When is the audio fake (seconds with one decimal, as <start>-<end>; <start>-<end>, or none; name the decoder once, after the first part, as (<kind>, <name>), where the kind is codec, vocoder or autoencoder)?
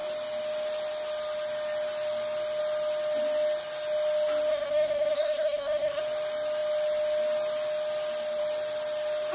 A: 4.5-6.0 (codec, SNAC)